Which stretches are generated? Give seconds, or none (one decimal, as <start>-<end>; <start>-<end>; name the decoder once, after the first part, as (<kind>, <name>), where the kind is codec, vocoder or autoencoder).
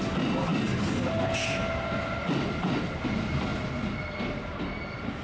none